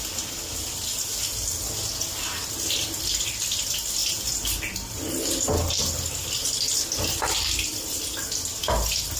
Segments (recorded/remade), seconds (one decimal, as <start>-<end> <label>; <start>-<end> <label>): 0.0-4.0 recorded; 4.0-5.8 remade; 5.8-7.7 recorded; 7.7-8.2 remade; 8.2-9.2 recorded